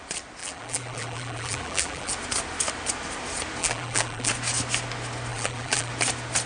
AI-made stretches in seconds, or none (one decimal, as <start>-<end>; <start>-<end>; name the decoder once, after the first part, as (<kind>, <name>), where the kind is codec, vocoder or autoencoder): 0.4-2.1 (vocoder, BigVGAN v2); 3.6-4.3; 5.3-5.9